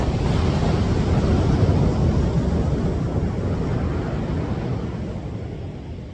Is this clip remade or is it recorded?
recorded